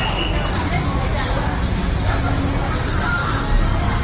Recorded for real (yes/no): yes